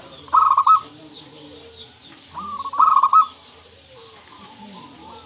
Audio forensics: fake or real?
real